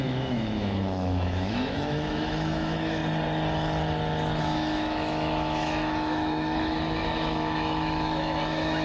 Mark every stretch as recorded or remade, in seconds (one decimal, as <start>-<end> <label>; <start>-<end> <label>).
0.0-3.0 remade; 3.0-4.4 recorded; 4.4-8.8 remade